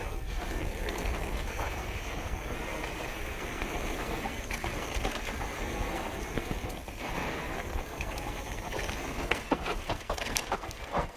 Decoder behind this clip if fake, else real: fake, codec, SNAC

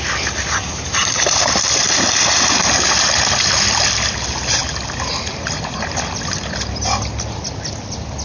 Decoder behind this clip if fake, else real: real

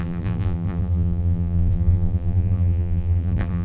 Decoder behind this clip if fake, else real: fake, vocoder, BigVGAN v2